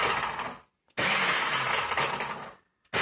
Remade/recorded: recorded